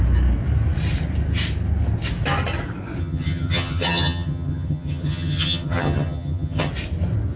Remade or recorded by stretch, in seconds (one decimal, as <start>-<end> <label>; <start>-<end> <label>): 0.0-3.0 recorded; 3.0-6.7 remade; 6.7-7.4 recorded

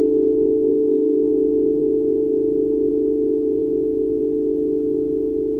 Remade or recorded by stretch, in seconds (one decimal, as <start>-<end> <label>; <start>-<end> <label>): 0.0-0.7 recorded; 0.7-1.3 remade; 1.3-5.6 recorded

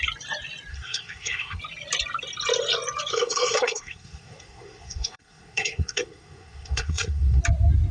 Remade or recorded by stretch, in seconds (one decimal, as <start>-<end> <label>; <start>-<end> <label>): 0.0-0.7 recorded; 0.7-1.6 remade; 1.6-3.1 recorded; 3.1-7.4 remade; 7.4-7.9 recorded

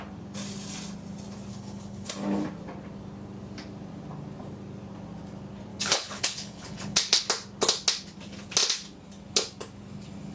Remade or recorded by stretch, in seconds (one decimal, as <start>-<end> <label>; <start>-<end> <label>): 0.0-1.5 recorded; 1.5-2.1 remade; 2.1-5.7 recorded; 5.7-7.3 remade; 7.3-10.3 recorded

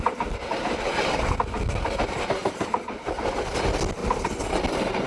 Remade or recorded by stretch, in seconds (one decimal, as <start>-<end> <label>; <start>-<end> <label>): 0.0-5.1 recorded

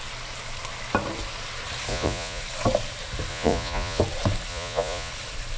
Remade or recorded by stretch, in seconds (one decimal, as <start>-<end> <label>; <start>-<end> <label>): 0.0-1.9 recorded; 1.9-2.4 remade; 2.4-3.3 recorded; 3.3-4.0 remade; 4.0-4.5 recorded; 4.5-5.1 remade; 5.1-5.6 recorded

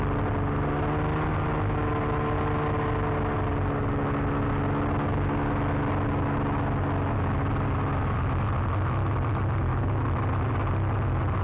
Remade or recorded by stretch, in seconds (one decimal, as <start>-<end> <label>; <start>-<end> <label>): 0.0-11.4 recorded

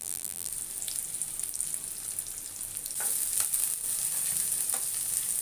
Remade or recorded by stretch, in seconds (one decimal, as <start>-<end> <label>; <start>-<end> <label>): 0.0-0.5 remade; 0.5-5.4 recorded